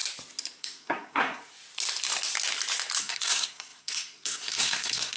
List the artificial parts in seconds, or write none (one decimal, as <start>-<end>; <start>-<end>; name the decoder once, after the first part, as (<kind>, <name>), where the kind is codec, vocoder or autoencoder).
0.6-1.4 (codec, SNAC); 3.0-5.2